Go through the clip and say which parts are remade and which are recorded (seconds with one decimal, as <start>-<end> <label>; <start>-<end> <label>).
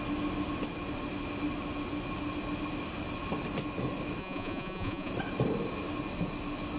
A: 0.0-4.2 recorded; 4.2-5.1 remade; 5.1-6.8 recorded